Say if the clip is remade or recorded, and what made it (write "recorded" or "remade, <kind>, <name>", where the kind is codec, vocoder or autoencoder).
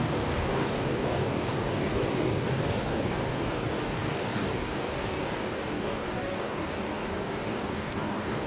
remade, codec, DAC